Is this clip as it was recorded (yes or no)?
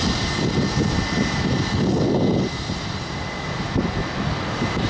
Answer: yes